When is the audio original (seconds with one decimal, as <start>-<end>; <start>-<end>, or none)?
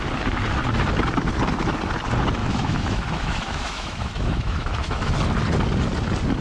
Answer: 0.0-2.4; 5.1-6.4